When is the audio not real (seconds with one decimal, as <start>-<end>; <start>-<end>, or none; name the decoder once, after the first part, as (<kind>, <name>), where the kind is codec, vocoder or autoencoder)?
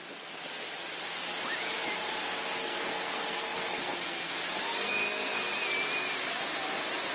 2.6-4.3 (codec, SNAC); 4.7-5.4